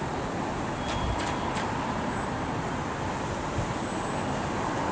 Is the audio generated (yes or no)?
no